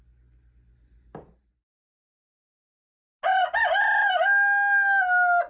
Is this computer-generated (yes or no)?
no